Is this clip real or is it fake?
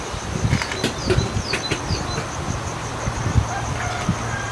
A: real